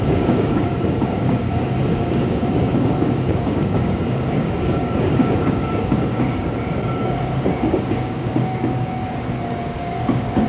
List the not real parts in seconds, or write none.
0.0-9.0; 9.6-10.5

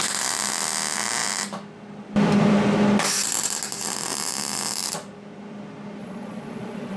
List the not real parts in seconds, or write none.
6.0-7.0

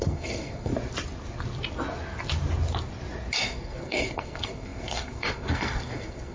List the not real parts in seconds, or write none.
0.0-0.7; 3.4-6.3

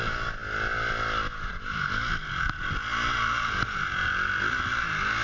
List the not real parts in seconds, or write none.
none

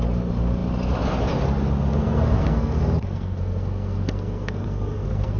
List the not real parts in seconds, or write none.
1.9-5.4